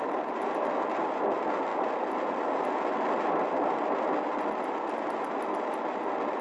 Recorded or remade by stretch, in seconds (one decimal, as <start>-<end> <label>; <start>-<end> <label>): 0.0-6.4 recorded